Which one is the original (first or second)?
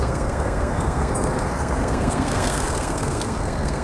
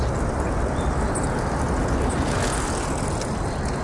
second